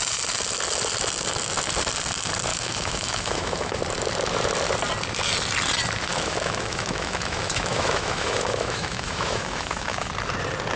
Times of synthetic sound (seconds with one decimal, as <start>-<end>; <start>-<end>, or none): 2.5-3.8; 6.1-10.1